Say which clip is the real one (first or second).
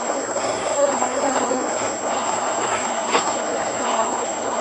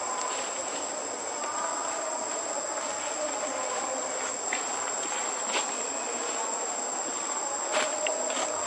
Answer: second